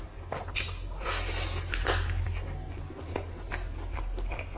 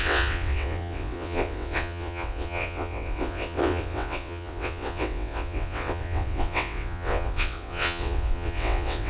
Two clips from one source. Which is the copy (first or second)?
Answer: second